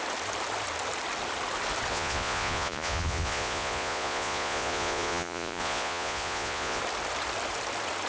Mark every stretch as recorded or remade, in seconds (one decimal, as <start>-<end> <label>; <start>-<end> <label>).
0.0-1.9 recorded; 1.9-6.8 remade; 6.8-8.1 recorded